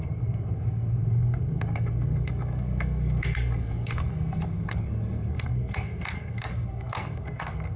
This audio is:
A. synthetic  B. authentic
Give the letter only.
A